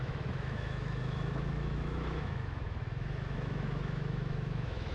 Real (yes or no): no